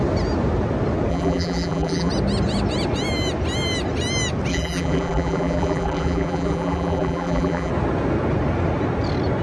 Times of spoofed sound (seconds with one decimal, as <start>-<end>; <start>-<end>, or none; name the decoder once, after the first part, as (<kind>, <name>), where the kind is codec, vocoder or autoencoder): 1.1-2.1 (vocoder, BigVGAN v2); 4.5-7.7